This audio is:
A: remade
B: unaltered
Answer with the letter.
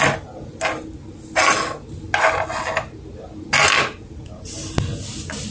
B